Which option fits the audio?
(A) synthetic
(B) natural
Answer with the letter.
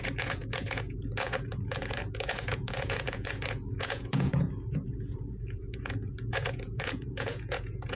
A